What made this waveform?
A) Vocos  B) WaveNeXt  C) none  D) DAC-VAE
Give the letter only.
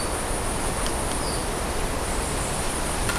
C